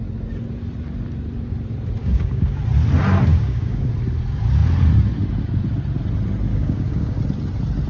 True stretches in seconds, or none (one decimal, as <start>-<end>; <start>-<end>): 0.0-2.0; 2.6-3.3; 3.9-6.5; 7.2-7.9